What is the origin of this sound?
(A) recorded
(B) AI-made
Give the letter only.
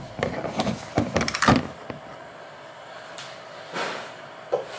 B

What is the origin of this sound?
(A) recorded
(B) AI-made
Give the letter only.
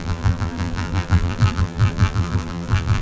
B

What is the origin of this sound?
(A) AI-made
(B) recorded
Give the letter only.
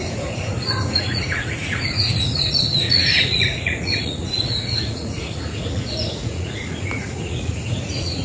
A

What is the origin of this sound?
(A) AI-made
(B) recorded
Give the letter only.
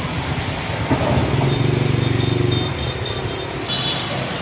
B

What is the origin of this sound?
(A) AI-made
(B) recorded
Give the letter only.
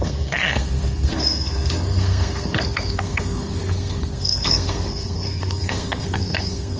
A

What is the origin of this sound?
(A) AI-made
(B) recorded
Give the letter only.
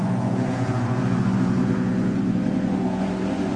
A